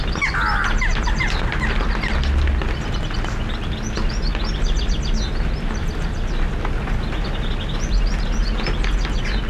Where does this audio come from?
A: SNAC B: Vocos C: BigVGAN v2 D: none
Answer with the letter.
D